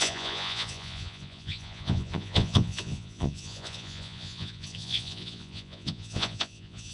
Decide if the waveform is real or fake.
fake